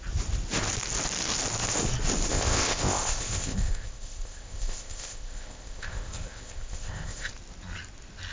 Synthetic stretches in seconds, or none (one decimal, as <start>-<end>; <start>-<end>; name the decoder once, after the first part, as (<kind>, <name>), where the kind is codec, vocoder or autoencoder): 2.3-7.3 (codec, ZipCodec)